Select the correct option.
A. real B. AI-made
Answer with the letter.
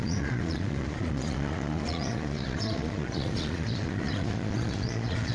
B